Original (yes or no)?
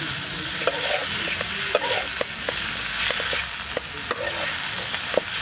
yes